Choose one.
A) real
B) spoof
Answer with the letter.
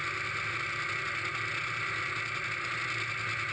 A